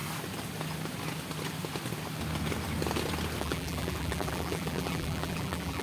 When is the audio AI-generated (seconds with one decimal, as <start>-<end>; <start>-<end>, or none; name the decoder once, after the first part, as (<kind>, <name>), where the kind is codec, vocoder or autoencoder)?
3.4-5.8 (vocoder, BigVGAN v2)